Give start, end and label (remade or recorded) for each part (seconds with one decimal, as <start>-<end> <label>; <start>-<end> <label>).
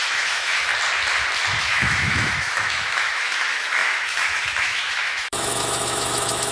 0.0-0.7 remade; 0.7-1.6 recorded; 1.6-6.5 remade